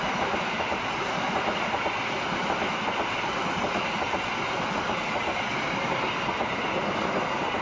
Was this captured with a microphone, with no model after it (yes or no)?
yes